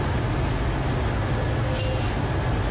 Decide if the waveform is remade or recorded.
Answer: recorded